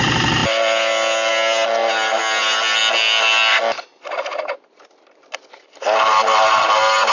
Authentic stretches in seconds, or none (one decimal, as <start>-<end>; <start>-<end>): 0.0-7.1